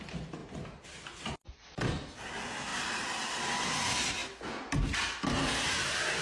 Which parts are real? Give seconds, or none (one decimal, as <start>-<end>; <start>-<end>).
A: 0.0-0.4; 1.9-2.7; 3.4-6.2

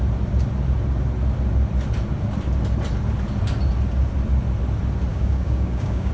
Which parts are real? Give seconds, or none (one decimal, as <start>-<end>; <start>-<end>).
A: 0.0-5.1

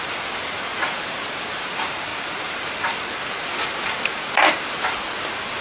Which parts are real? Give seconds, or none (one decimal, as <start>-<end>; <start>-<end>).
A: 0.0-5.6

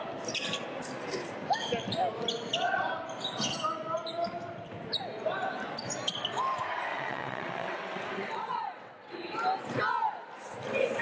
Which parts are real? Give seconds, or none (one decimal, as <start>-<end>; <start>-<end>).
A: 0.0-6.9; 9.1-11.0

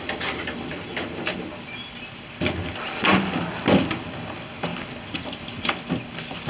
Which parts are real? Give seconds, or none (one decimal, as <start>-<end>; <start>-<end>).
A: 0.0-6.5

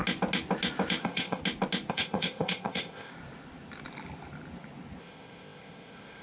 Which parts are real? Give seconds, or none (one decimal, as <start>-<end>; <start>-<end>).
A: 0.0-1.0; 1.4-1.9; 3.1-5.0